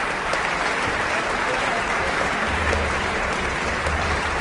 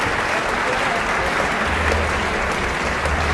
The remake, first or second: first